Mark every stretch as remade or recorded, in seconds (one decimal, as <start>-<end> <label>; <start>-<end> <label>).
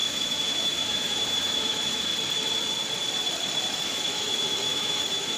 0.0-2.1 remade; 2.1-3.7 recorded; 3.7-5.4 remade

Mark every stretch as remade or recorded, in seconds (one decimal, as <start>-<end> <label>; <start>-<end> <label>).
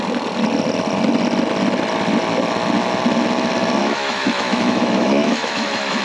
0.0-3.8 recorded; 3.8-6.0 remade